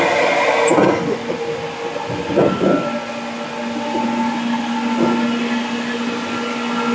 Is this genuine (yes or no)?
yes